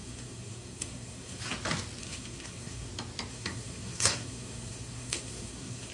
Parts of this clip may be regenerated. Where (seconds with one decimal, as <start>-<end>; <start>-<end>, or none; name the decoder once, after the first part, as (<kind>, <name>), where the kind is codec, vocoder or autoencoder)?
0.0-1.4 (codec, SNAC); 2.0-2.9; 3.3-5.9